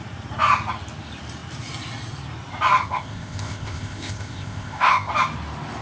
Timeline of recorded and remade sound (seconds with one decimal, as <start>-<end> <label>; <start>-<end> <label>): 0.0-2.8 recorded; 2.8-5.1 remade; 5.1-5.8 recorded